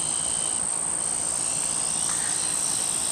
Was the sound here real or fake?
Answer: real